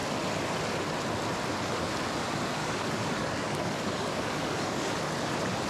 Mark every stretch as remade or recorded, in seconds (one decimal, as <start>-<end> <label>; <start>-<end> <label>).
0.0-2.6 recorded; 2.6-4.9 remade; 4.9-5.7 recorded